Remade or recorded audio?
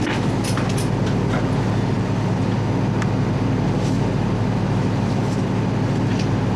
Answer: recorded